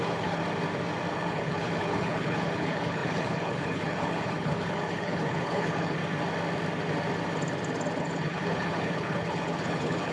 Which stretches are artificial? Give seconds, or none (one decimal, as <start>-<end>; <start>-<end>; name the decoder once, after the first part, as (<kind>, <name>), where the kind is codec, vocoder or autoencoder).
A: 0.0-0.4 (codec, HILCodec); 1.1-6.0; 8.0-10.1